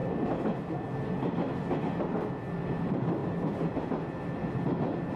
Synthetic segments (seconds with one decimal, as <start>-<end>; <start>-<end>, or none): none